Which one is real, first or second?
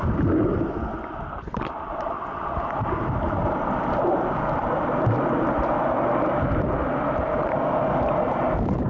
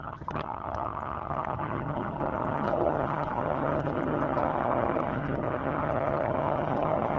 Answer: first